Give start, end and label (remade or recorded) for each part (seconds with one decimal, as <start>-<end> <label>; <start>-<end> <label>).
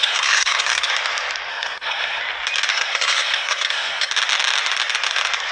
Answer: 0.0-0.9 remade; 0.9-1.5 recorded; 1.5-2.2 remade; 2.2-2.7 recorded; 2.7-4.1 remade; 4.1-5.5 recorded